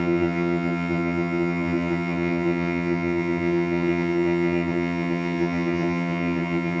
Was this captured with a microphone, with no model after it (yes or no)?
no